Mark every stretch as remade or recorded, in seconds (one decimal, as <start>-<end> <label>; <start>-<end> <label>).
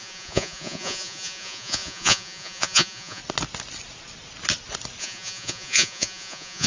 0.0-3.2 remade; 3.2-5.0 recorded; 5.0-6.7 remade